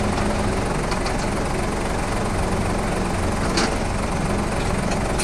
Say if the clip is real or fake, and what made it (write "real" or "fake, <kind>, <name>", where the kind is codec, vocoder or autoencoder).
real